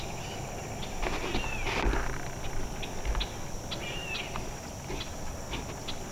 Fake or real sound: real